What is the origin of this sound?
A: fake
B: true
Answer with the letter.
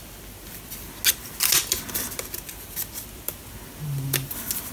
B